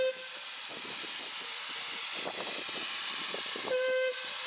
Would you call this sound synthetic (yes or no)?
no